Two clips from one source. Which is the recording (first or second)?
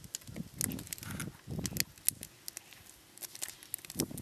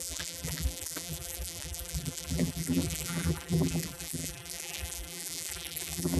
first